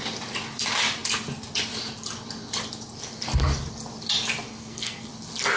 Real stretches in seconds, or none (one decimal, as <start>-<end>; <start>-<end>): 0.0-4.5; 5.1-5.6